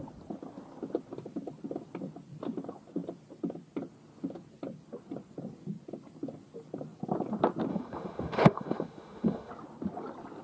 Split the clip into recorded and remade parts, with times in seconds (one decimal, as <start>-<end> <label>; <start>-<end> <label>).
0.0-7.7 recorded; 7.7-9.5 remade; 9.5-10.4 recorded